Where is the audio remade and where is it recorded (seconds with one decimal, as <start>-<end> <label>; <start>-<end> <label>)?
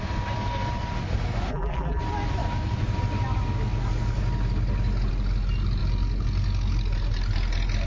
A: 0.0-1.5 recorded; 1.5-2.0 remade; 2.0-7.9 recorded